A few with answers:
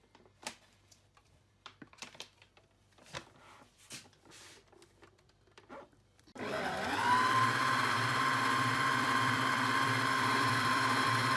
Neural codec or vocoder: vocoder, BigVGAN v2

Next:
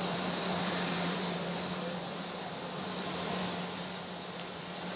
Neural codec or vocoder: vocoder, BigVGAN v2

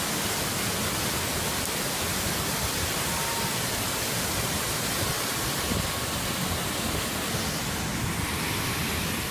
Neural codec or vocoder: none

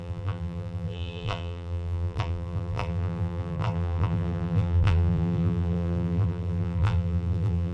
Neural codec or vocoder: vocoder, BigVGAN v2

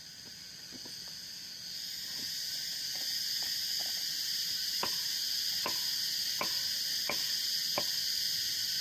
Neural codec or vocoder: none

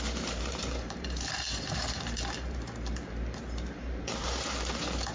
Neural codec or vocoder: vocoder, BigVGAN v2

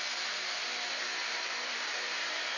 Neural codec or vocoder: vocoder, BigVGAN v2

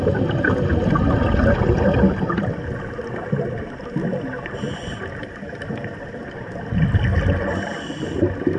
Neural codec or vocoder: none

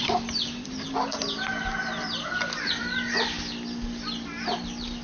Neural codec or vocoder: vocoder, BigVGAN v2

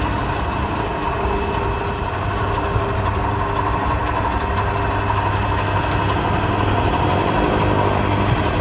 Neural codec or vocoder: none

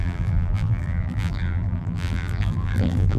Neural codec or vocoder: vocoder, BigVGAN v2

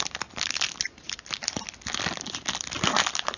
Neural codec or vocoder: vocoder, BigVGAN v2